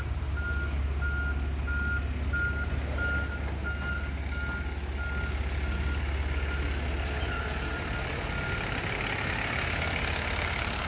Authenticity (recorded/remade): recorded